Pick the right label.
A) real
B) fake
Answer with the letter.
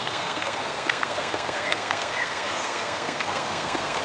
B